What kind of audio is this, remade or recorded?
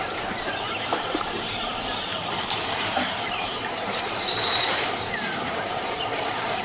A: remade